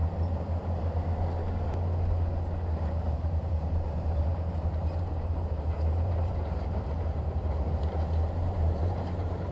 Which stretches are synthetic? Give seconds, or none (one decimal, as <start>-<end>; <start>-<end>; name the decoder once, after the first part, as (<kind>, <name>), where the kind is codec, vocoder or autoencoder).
2.7-9.5 (vocoder, BigVGAN v2)